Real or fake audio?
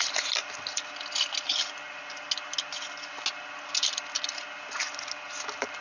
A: real